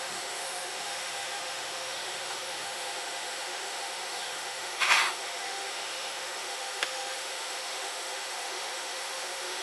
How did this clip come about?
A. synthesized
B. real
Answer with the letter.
A